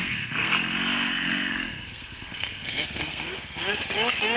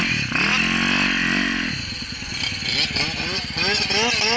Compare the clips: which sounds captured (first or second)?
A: second